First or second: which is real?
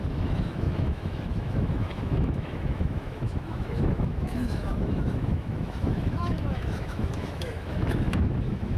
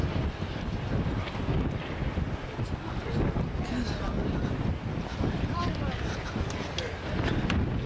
second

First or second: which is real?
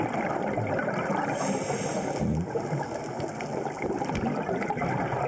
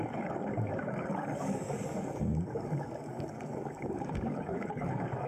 first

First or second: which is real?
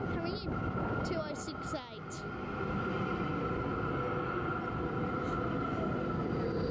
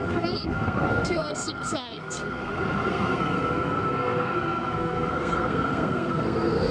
first